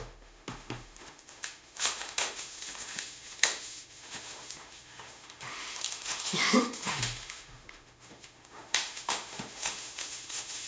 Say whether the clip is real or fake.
fake